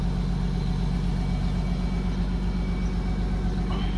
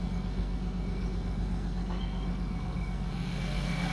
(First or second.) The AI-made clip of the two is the second